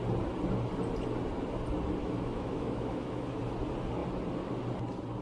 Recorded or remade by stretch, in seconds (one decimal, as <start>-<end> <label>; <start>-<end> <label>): 0.0-2.0 recorded; 2.0-3.4 remade; 3.4-5.2 recorded